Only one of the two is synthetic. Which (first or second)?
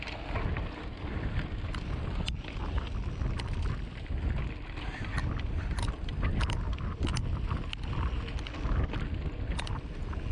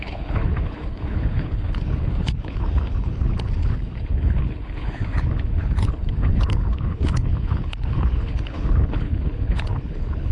second